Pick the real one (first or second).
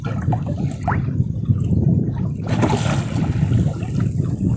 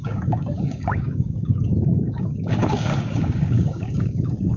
first